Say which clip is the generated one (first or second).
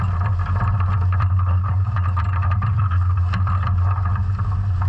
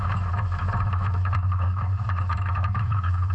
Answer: second